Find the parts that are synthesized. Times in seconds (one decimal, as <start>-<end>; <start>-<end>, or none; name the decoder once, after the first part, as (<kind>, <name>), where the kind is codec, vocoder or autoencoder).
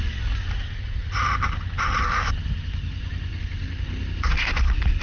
none